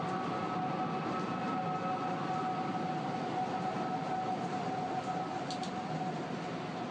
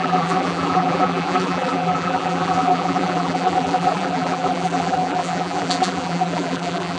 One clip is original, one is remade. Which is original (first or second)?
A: first